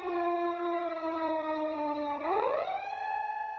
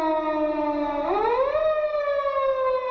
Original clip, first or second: second